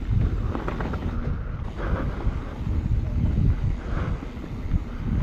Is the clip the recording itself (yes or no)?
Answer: yes